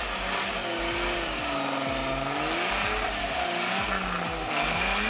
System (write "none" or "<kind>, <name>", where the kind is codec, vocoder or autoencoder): none